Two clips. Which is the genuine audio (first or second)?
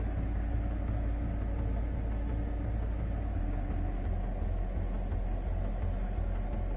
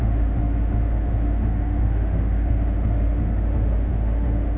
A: first